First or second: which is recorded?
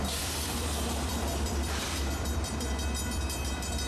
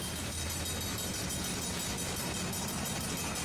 second